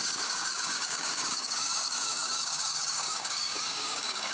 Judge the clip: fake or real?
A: fake